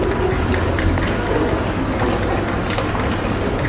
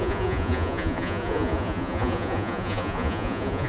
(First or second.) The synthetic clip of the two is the second